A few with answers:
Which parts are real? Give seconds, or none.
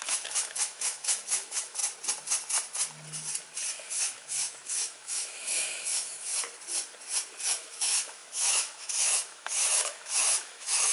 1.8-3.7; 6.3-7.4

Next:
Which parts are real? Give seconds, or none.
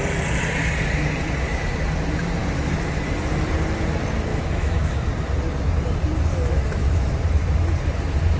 0.0-4.3; 5.1-6.3; 7.1-8.4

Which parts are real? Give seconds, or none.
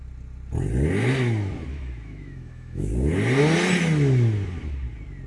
0.0-1.7; 2.9-5.3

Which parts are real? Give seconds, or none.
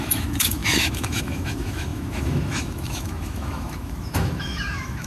none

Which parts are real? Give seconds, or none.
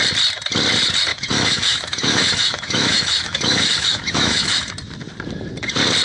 0.0-1.1; 4.7-6.0